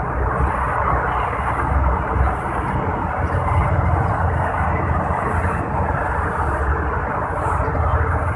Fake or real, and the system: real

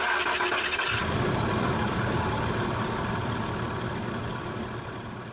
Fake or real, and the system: fake, vocoder, BigVGAN v2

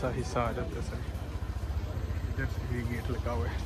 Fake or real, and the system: real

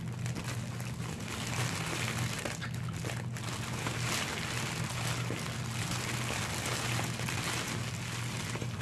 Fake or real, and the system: real